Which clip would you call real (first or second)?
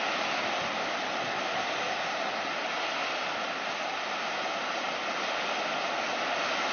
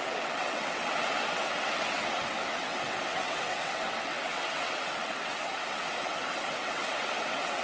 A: first